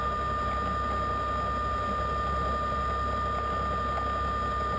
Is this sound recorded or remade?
recorded